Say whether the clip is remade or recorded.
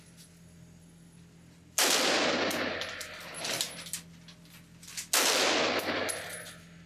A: recorded